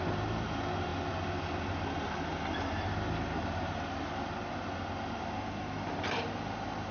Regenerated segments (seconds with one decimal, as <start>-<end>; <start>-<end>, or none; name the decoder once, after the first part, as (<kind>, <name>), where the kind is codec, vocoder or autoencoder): none